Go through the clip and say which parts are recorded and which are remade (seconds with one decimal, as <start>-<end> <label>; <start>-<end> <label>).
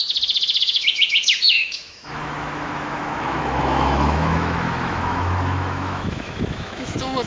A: 0.0-0.6 recorded; 0.6-7.3 remade